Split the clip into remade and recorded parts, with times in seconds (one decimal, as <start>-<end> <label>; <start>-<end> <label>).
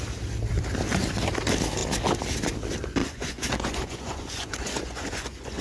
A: 0.0-3.0 recorded; 3.0-5.6 remade